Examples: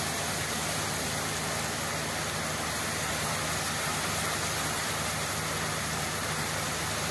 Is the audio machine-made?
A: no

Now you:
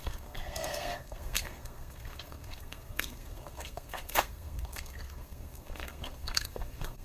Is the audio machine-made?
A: yes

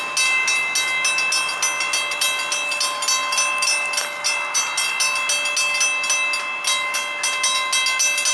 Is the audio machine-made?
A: no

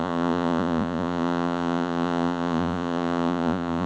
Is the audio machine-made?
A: yes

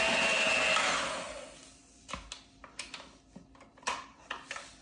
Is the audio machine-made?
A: no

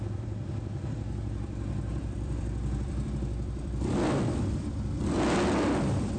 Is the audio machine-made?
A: yes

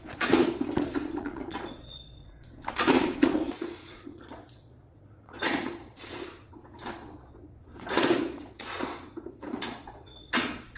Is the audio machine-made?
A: yes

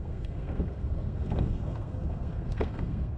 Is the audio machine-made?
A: yes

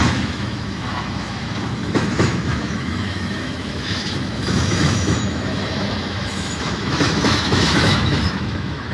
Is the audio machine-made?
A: yes